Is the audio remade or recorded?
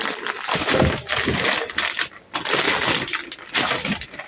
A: recorded